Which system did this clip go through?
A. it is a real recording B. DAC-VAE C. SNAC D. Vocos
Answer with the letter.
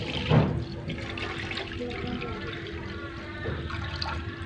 A